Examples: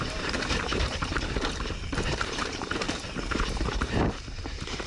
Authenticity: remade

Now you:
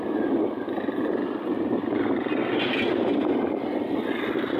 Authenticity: recorded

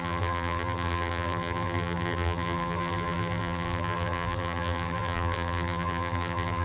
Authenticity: remade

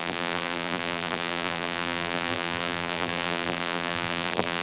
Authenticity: remade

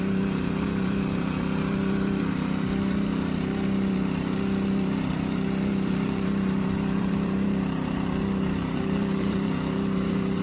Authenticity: remade